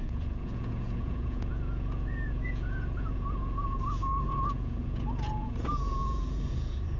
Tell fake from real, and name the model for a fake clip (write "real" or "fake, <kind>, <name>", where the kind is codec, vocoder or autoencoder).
fake, vocoder, Vocos